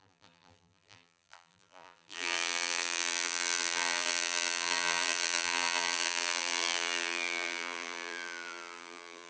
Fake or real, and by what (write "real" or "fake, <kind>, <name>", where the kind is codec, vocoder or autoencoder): fake, vocoder, BigVGAN v2